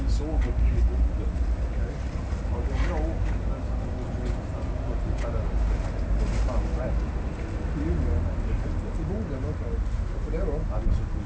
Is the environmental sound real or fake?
real